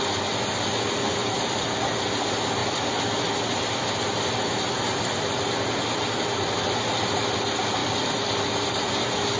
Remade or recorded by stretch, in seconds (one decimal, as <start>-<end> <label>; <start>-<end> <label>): 0.0-1.2 recorded; 1.2-1.8 remade; 1.8-7.8 recorded; 7.8-8.4 remade; 8.4-9.4 recorded